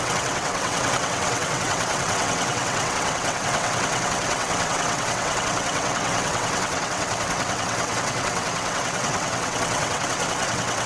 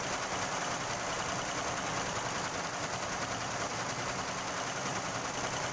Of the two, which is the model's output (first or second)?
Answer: first